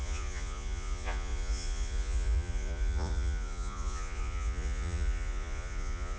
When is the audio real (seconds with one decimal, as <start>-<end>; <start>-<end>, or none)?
none